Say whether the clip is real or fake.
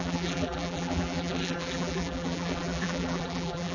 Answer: fake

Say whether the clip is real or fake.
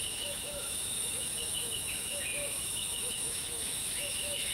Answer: fake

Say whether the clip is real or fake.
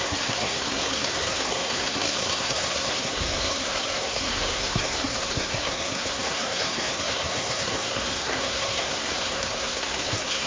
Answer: fake